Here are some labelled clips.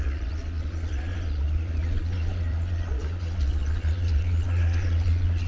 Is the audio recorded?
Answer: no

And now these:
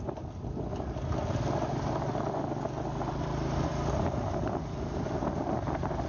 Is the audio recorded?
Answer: yes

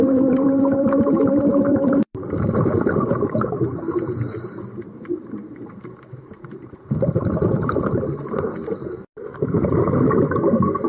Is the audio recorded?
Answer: no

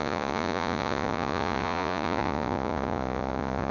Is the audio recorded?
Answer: no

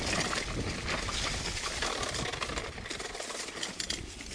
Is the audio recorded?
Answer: yes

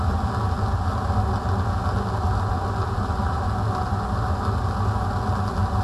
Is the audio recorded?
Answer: yes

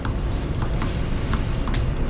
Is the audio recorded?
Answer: yes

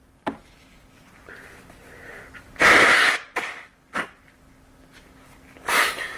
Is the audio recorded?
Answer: yes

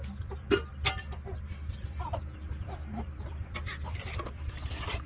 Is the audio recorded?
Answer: yes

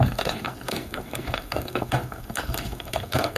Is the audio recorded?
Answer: no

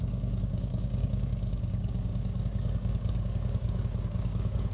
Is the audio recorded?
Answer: no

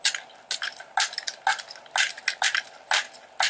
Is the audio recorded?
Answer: yes